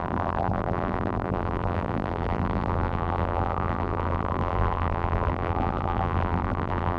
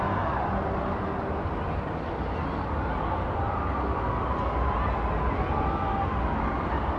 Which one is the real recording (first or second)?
second